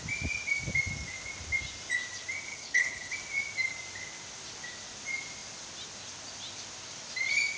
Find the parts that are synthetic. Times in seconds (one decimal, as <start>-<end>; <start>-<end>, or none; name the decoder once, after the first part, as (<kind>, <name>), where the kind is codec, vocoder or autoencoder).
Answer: 2.5-3.1 (codec, HILCodec)